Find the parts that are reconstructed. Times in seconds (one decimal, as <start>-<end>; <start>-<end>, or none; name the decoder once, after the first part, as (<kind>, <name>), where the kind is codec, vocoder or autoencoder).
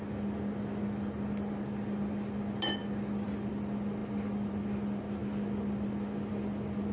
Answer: none